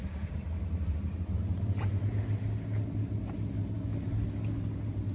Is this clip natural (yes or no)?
yes